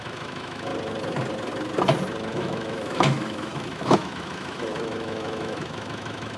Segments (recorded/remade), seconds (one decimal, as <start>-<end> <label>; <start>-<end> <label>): 0.0-0.7 remade; 0.7-2.3 recorded; 2.3-6.4 remade

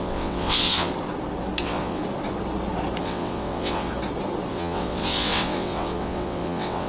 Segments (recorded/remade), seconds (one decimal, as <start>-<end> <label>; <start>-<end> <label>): 0.0-0.9 remade; 0.9-1.6 recorded; 1.6-2.0 remade; 2.0-3.0 recorded; 3.0-3.9 remade; 3.9-4.5 recorded; 4.5-6.9 remade

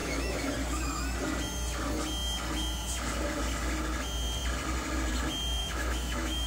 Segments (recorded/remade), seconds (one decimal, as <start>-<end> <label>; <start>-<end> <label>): 0.0-0.5 remade; 0.5-5.6 recorded; 5.6-6.5 remade

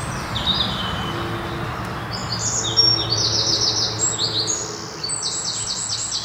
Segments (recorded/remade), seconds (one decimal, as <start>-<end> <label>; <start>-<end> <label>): 0.0-6.2 recorded

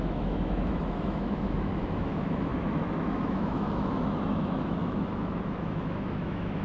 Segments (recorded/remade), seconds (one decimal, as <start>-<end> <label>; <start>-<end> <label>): 0.0-6.6 remade

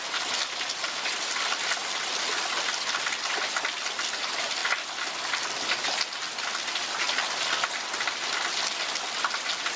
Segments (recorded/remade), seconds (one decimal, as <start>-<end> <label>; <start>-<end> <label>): 0.0-9.8 recorded

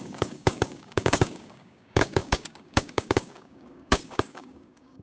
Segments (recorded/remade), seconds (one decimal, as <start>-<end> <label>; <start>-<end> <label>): 0.0-5.0 remade

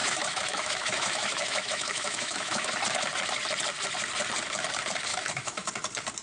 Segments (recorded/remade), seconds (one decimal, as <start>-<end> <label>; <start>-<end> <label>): 0.0-2.8 remade; 2.8-5.1 recorded; 5.1-5.7 remade; 5.7-6.2 recorded